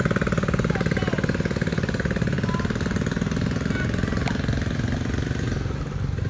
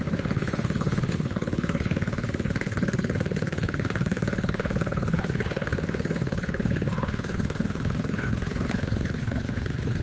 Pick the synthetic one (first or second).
second